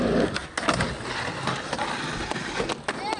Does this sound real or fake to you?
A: real